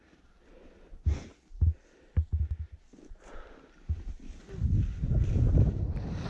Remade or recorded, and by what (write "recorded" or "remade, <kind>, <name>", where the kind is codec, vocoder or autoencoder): recorded